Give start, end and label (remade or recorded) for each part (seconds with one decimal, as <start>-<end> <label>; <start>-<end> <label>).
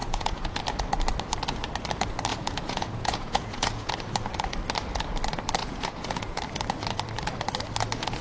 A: 0.0-0.6 remade; 0.6-2.3 recorded; 2.3-3.9 remade; 3.9-5.6 recorded; 5.6-6.4 remade; 6.4-8.2 recorded